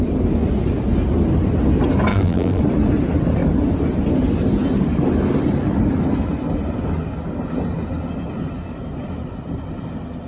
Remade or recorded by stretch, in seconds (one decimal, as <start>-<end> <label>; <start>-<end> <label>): 0.0-2.1 recorded; 2.1-2.6 remade; 2.6-10.3 recorded